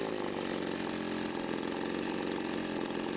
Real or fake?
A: real